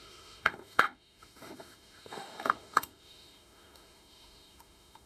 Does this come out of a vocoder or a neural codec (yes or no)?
yes